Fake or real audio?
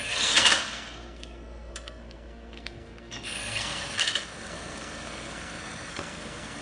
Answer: fake